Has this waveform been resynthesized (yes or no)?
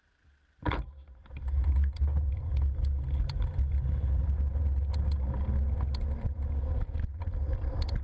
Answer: no